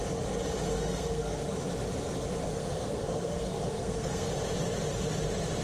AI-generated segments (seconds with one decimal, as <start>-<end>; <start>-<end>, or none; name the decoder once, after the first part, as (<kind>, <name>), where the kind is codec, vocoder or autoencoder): 0.7-1.5 (codec, SNAC); 2.5-4.3